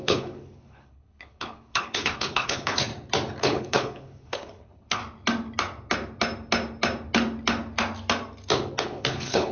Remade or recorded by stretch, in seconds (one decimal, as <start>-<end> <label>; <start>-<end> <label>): 0.0-2.9 remade; 2.9-3.4 recorded; 3.4-5.0 remade; 5.0-8.8 recorded; 8.8-9.5 remade